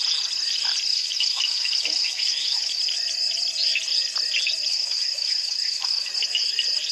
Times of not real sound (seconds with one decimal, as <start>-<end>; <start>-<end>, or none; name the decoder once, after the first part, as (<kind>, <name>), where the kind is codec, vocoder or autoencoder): 0.9-2.8 (autoencoder, DAC-VAE); 4.7-6.1